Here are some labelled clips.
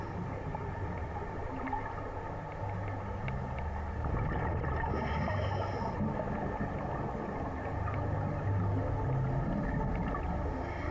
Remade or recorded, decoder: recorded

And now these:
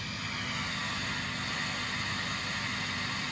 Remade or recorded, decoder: recorded